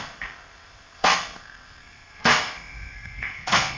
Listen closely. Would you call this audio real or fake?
fake